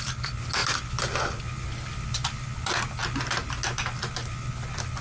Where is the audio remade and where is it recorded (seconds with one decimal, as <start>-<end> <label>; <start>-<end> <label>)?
0.0-5.0 recorded